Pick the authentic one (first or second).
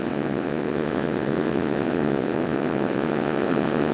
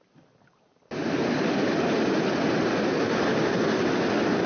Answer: second